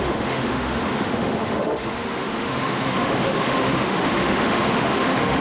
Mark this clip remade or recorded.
remade